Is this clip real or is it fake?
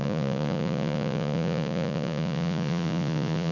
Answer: fake